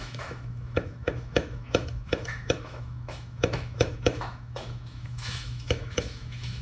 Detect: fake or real fake